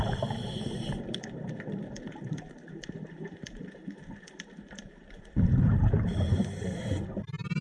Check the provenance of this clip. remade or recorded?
remade